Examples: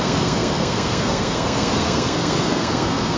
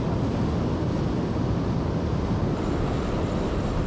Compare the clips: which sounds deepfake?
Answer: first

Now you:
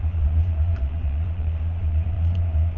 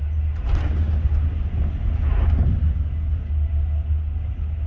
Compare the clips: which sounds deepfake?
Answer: first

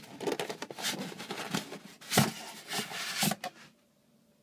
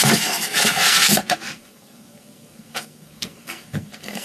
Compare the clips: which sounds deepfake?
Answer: second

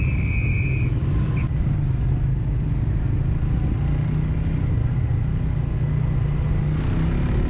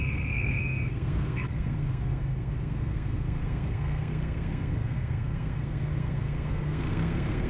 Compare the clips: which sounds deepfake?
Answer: second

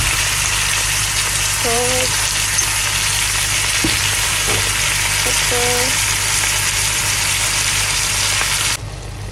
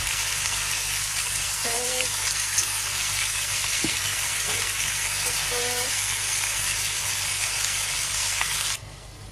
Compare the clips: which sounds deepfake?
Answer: second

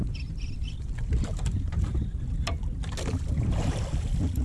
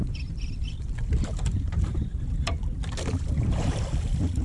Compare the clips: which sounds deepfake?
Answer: second